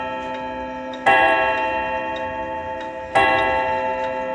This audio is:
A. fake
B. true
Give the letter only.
B